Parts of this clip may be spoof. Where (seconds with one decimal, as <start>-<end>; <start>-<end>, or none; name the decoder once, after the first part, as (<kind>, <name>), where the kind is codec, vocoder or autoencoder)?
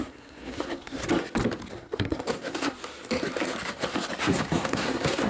0.0-1.0 (codec, SNAC); 1.7-2.8; 4.2-5.3